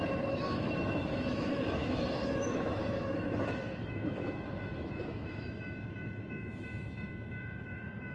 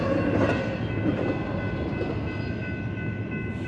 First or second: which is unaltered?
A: second